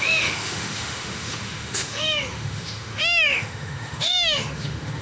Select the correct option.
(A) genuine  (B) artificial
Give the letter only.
B